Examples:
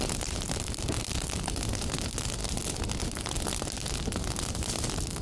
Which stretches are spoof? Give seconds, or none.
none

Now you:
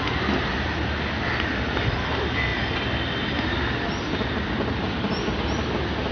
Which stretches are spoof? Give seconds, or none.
none

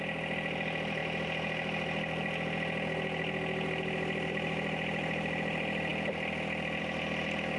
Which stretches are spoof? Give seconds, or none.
none

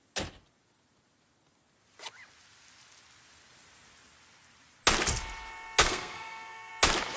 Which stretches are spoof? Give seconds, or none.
5.8-6.7

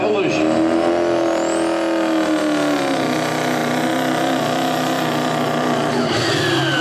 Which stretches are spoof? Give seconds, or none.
none